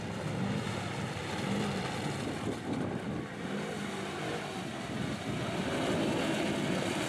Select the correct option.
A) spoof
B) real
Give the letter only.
B